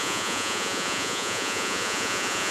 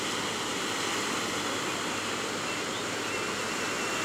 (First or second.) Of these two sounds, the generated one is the first